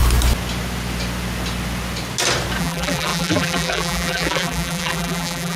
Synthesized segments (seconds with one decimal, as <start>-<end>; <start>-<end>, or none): 2.6-5.5